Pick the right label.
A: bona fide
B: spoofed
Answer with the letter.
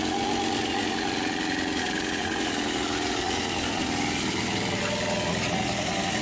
A